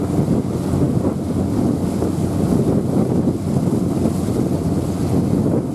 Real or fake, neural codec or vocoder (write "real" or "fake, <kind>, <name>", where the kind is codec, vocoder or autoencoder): real